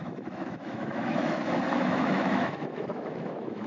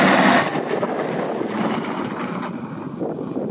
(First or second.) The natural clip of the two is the second